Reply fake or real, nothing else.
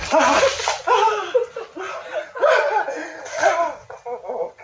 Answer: real